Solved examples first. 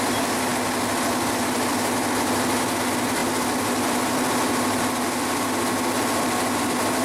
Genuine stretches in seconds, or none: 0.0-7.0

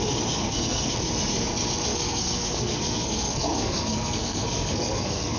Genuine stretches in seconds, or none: 0.0-0.4; 0.9-1.9

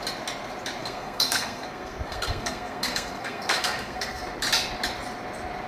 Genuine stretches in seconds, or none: 0.0-0.8; 4.2-5.7

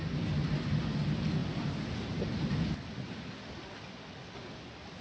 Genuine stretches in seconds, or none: 0.0-1.4; 2.6-5.0

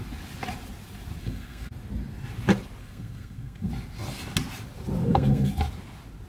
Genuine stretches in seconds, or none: 0.0-1.2; 1.7-2.8; 3.7-5.0; 5.5-6.3

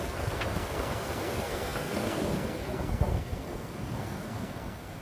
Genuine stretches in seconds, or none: none